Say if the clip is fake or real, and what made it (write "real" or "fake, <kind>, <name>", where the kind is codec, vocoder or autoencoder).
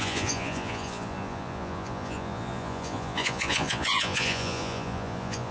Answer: fake, vocoder, Vocos